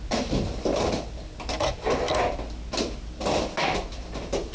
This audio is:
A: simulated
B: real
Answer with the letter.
B